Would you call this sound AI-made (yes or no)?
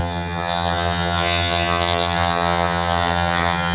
yes